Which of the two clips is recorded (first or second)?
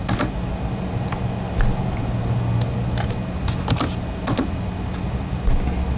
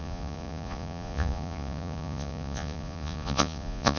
first